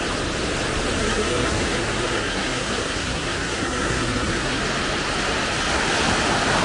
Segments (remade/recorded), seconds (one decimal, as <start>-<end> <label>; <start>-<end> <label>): 0.0-1.0 recorded; 1.0-4.6 remade; 4.6-6.6 recorded